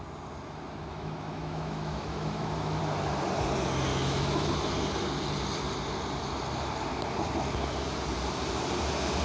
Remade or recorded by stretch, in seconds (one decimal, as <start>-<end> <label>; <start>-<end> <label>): 0.0-0.9 recorded; 0.9-2.8 remade; 2.8-3.9 recorded; 3.9-4.5 remade; 4.5-9.2 recorded